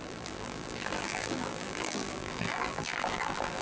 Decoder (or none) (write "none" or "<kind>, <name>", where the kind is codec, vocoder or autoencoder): vocoder, BigVGAN v2